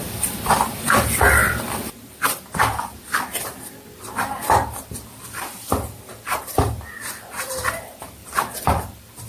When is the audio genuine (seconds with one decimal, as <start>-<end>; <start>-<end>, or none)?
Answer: none